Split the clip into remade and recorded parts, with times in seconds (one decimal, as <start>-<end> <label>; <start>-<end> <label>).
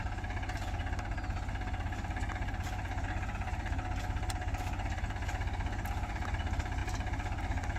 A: 0.0-7.8 recorded